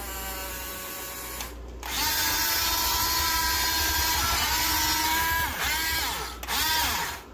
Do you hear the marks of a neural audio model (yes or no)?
no